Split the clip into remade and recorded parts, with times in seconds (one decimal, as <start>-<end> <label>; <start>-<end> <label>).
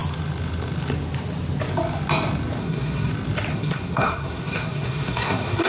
0.0-2.6 recorded; 2.6-3.1 remade; 3.1-3.5 recorded; 3.5-5.7 remade